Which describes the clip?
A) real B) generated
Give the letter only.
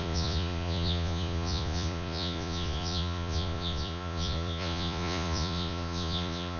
B